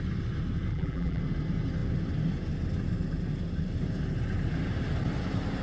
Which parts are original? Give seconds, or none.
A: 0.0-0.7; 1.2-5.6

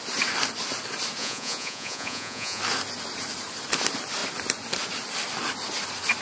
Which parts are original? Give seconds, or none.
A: 0.0-1.2; 2.6-6.2

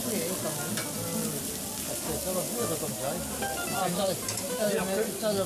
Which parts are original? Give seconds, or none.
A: 0.0-3.8; 4.8-5.5

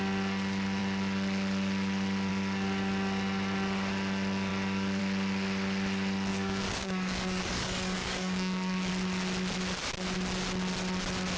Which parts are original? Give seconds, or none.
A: 0.0-6.3; 8.9-11.4

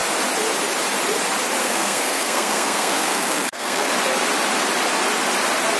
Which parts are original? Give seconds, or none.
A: 0.0-1.6; 3.9-5.8

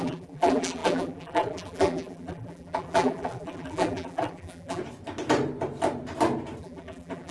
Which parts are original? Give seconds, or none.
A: 4.8-6.6

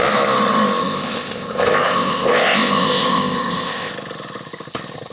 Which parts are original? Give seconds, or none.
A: 0.0-0.8; 3.9-5.1

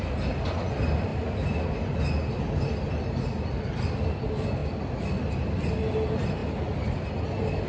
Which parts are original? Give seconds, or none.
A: 0.0-7.7